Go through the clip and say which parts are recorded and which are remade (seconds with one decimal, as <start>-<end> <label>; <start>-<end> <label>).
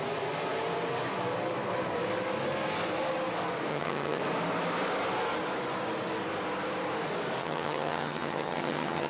0.0-3.7 recorded; 3.7-4.2 remade; 4.2-7.4 recorded; 7.4-9.1 remade